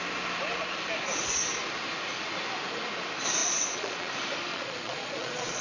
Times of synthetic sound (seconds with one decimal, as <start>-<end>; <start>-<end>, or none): 3.4-4.1; 4.5-5.6